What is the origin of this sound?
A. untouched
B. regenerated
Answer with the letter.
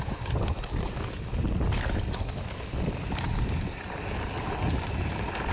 A